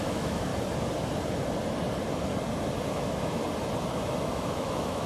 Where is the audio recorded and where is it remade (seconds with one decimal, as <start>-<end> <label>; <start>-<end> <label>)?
0.0-0.5 remade; 0.5-2.9 recorded; 2.9-3.4 remade; 3.4-4.2 recorded; 4.2-5.1 remade